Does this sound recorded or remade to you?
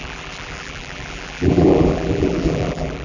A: remade